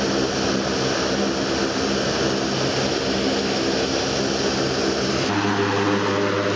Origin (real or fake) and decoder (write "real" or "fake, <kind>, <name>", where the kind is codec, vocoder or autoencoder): real